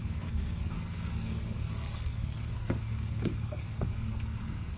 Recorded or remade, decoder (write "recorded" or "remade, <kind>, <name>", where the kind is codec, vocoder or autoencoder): remade, codec, SNAC